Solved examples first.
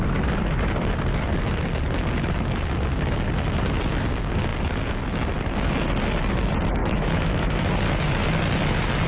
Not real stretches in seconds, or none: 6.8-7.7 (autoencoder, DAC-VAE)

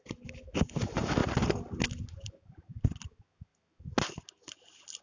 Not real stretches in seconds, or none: none

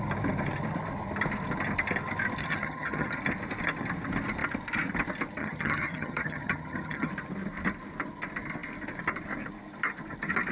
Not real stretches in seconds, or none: 2.4-3.2 (vocoder, HiFi-GAN); 5.4-7.1

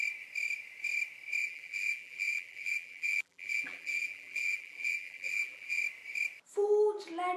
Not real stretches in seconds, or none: 1.4-5.8 (vocoder, BigVGAN v2)

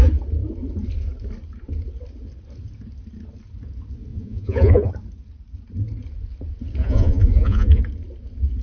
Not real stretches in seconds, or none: 4.1-4.9 (vocoder, Vocos); 6.8-7.8

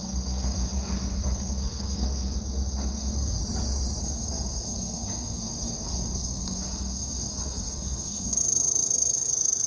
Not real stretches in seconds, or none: 0.0-3.4 (codec, SNAC); 4.0-9.7

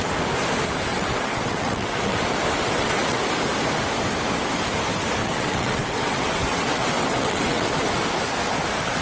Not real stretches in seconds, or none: 0.9-2.2 (vocoder, WaveNeXt); 2.6-3.2; 5.2-7.7

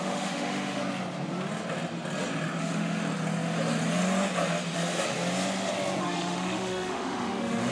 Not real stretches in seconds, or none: 0.0-0.8 (autoencoder, DAC-VAE); 2.6-3.0; 6.0-7.7